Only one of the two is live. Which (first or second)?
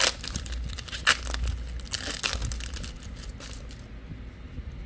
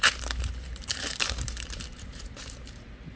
first